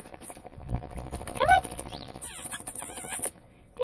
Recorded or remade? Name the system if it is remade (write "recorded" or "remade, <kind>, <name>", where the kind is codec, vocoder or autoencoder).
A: remade, vocoder, Vocos